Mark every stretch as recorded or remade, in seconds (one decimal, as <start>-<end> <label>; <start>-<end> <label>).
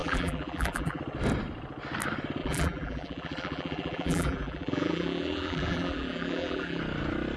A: 0.0-1.0 remade; 1.0-2.4 recorded; 2.4-6.8 remade; 6.8-7.4 recorded